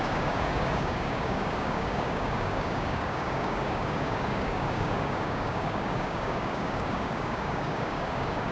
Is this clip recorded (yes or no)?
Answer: no